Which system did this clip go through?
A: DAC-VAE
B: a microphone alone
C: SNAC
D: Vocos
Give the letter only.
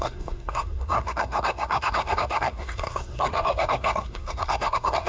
C